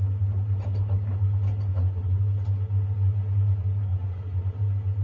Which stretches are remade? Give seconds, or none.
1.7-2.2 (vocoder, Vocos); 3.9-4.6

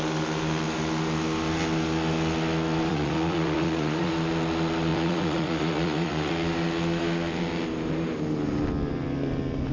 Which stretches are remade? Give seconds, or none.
2.9-4.1 (vocoder, Vocos); 4.9-6.3

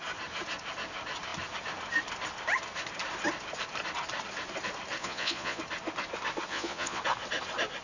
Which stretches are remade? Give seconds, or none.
5.0-5.6 (vocoder, Vocos); 6.5-7.0

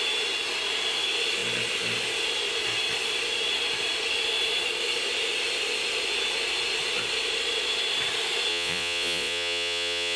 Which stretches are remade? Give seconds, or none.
8.5-10.2 (vocoder, Vocos)